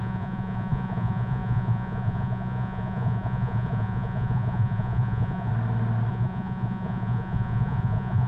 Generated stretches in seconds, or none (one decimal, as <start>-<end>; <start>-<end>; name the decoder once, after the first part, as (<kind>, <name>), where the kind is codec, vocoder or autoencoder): 0.0-5.5 (vocoder, Vocos); 6.1-8.3